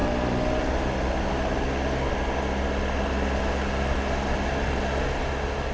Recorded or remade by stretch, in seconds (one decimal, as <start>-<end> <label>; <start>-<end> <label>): 0.0-5.7 recorded